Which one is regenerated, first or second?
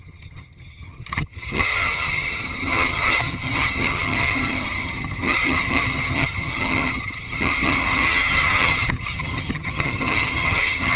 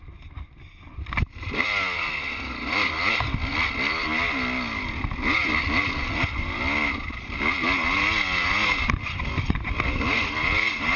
first